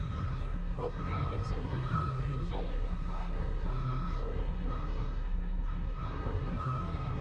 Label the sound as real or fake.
fake